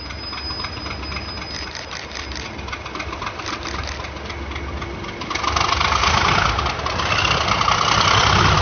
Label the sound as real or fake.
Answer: real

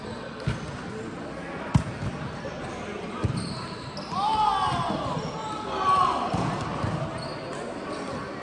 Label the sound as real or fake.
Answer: real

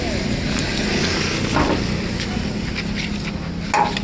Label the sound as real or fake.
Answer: real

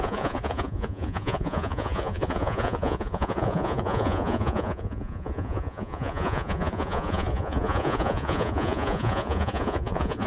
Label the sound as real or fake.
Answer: fake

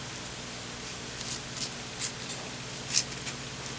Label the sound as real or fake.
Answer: real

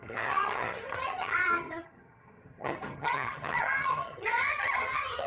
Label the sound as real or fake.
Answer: fake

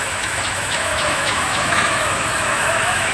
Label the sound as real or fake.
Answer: fake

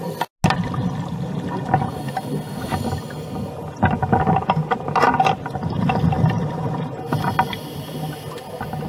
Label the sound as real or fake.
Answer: real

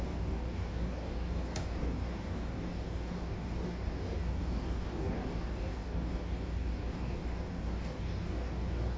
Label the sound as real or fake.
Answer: fake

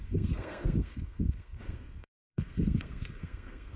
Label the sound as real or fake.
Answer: fake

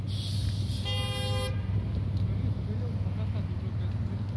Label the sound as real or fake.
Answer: real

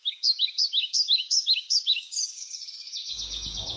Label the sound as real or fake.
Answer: fake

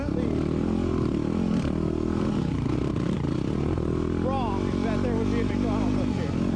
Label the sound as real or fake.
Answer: real